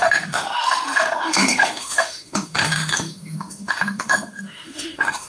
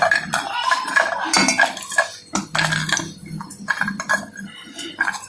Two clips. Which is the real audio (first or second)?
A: second